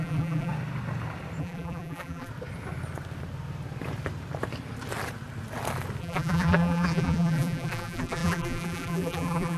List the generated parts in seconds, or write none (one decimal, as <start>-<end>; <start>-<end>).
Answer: 0.0-0.5; 1.4-2.3; 6.0-9.6